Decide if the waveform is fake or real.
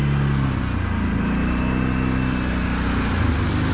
real